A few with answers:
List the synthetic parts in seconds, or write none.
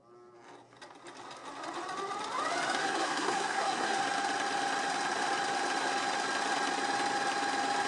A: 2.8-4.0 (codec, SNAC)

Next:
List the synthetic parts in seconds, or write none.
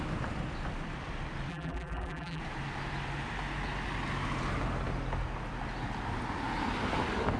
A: 1.5-2.4 (vocoder, BigVGAN v2)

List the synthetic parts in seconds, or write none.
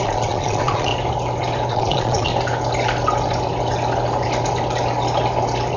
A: 0.0-0.9 (vocoder, Vocos); 1.7-2.3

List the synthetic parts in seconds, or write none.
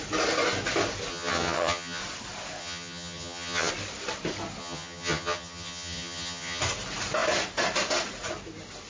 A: 1.1-2.0 (vocoder, HiFi-GAN); 2.6-3.7; 4.6-6.6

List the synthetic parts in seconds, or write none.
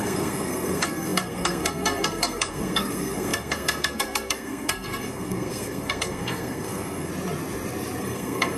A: 0.0-7.1 (codec, SNAC); 8.0-8.6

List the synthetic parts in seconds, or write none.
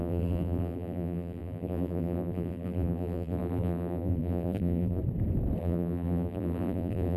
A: 0.0-5.0 (vocoder, BigVGAN v2); 5.6-7.2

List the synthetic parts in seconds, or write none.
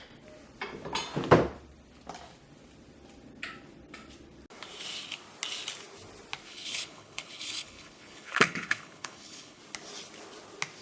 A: 6.5-9.6 (codec, HILCodec)